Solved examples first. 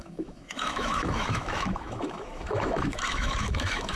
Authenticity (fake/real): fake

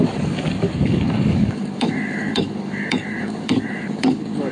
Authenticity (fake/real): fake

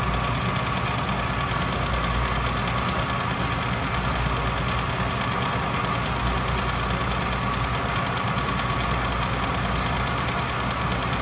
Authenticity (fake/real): real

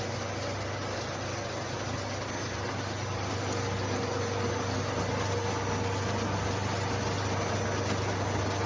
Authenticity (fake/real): real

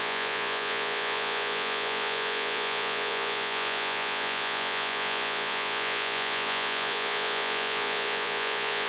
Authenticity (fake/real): fake